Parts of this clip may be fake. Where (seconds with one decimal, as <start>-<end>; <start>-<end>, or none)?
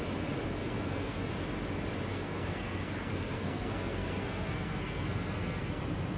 0.6-1.3; 2.1-5.8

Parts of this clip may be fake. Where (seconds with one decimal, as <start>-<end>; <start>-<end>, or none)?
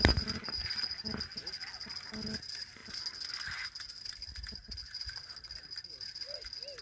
none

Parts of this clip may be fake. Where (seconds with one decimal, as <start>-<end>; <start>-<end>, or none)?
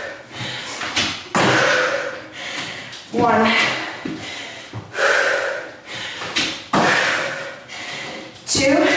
none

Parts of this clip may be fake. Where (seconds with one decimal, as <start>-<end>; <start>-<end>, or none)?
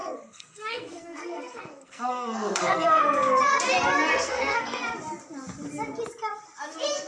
0.0-3.5; 4.1-4.8